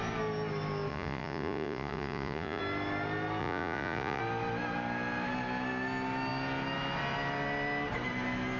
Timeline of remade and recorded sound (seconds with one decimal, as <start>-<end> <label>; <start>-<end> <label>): 0.0-0.9 recorded; 0.9-2.6 remade; 2.6-3.4 recorded; 3.4-4.2 remade; 4.2-8.6 recorded